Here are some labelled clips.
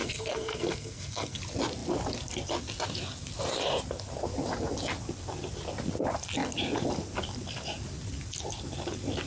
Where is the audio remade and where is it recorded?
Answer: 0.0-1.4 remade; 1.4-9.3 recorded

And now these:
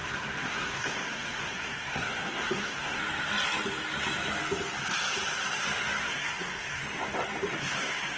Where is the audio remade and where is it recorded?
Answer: 0.0-3.0 remade; 3.0-6.1 recorded; 6.1-6.8 remade; 6.8-7.6 recorded; 7.6-8.2 remade